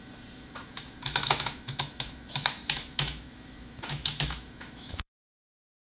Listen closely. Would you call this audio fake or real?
fake